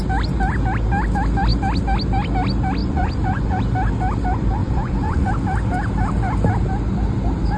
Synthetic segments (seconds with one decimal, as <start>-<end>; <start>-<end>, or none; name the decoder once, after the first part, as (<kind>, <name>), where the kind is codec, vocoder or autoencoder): 2.8-3.6 (vocoder, Vocos); 4.6-5.3